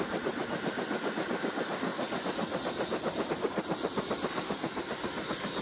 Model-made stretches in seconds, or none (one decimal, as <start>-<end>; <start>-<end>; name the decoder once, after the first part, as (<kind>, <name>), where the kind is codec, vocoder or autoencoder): none